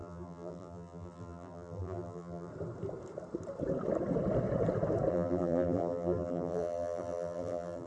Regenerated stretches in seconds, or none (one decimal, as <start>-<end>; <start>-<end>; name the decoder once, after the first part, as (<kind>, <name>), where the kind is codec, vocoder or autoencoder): 0.0-2.5 (vocoder, BigVGAN v2); 5.1-7.9